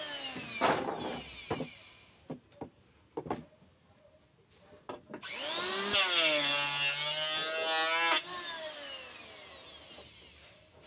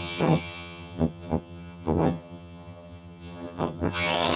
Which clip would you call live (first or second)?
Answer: first